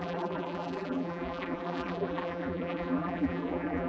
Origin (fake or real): fake